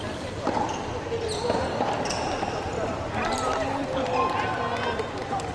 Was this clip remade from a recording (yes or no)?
no